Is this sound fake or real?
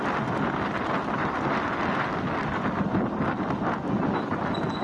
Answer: real